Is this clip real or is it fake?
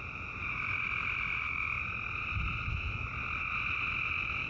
real